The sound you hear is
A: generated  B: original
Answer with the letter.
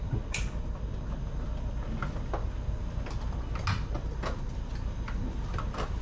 B